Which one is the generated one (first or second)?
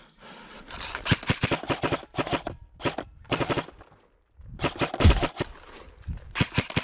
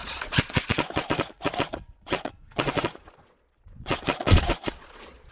second